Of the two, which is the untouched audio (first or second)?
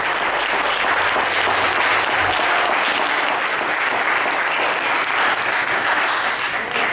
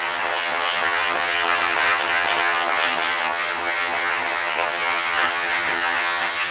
first